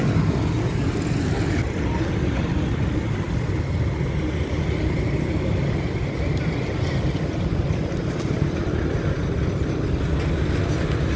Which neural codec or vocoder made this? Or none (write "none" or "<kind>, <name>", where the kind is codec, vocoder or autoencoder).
none